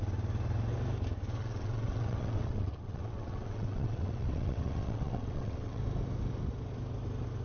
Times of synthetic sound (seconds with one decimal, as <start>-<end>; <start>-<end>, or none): 1.4-5.8